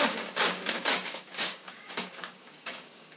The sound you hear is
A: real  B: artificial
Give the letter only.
B